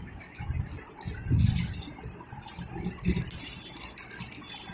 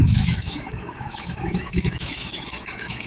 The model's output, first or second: second